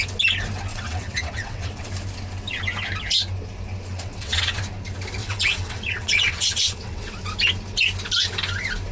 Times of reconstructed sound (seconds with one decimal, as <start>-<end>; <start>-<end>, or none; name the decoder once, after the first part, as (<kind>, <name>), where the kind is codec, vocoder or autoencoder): 0.7-1.9 (vocoder, WaveNeXt); 3.9-4.6; 5.2-7.2